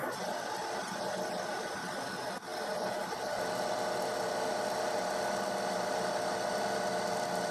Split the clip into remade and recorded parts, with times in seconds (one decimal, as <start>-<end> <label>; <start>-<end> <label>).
0.0-7.5 recorded